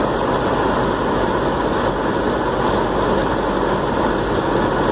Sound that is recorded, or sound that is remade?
recorded